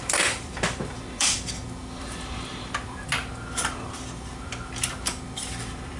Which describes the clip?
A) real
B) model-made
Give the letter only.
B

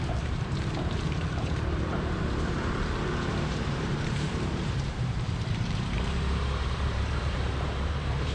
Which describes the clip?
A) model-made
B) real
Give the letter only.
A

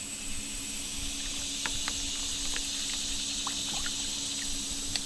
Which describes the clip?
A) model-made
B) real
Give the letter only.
B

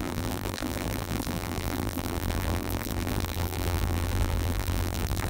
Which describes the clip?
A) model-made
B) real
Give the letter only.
A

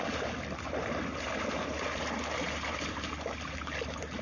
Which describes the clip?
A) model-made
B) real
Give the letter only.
A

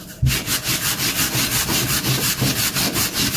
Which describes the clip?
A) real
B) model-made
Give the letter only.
A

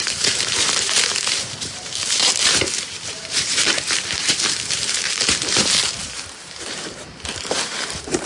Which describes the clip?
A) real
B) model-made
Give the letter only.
B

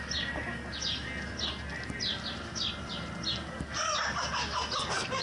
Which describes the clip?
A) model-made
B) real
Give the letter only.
B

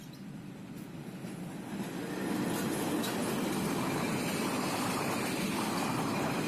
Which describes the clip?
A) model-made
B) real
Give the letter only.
B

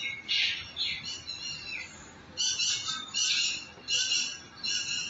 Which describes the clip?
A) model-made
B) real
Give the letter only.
B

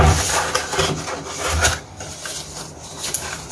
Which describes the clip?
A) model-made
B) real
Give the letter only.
B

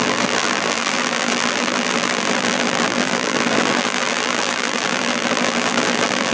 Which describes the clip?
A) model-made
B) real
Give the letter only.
A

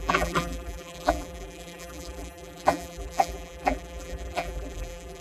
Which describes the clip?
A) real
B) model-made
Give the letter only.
B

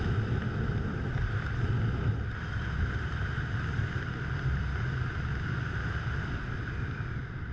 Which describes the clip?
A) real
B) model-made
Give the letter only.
A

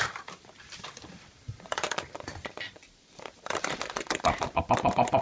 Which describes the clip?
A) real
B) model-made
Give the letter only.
B